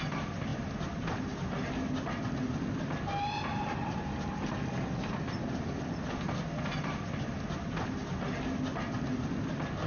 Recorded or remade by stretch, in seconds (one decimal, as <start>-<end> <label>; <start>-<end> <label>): 0.0-9.9 recorded